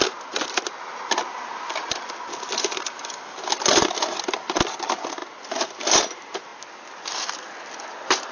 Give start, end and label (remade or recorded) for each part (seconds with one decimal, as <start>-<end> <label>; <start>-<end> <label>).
0.0-6.5 recorded; 6.5-7.7 remade; 7.7-8.3 recorded